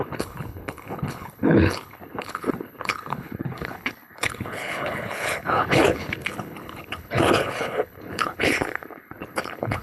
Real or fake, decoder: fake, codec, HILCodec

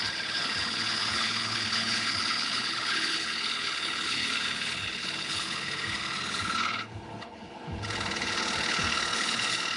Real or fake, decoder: fake, codec, HILCodec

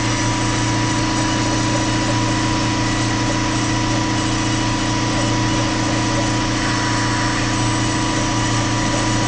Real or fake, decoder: real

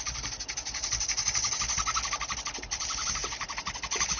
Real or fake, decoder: real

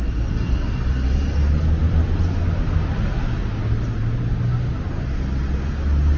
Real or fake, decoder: real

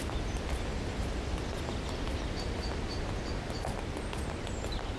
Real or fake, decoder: real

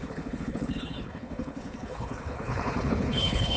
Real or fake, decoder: fake, codec, HILCodec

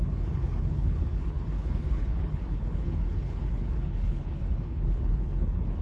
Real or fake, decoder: fake, codec, HILCodec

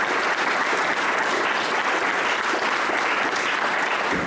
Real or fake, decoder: real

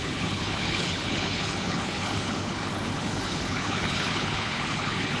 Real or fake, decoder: fake, codec, HILCodec